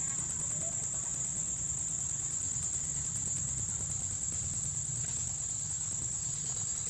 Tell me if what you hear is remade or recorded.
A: recorded